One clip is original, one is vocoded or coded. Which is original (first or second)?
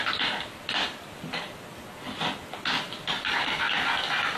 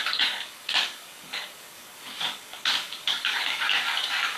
first